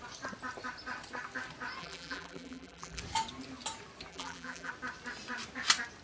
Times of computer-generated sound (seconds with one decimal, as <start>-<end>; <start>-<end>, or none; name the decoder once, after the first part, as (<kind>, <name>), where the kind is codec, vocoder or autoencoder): 1.8-3.0 (vocoder, BigVGAN v2); 4.1-4.7